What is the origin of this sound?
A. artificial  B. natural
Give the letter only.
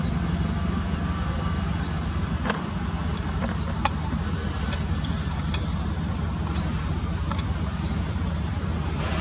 A